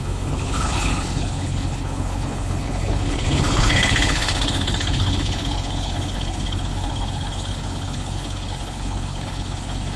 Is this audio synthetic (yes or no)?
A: yes